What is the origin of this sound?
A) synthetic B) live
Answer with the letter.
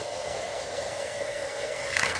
A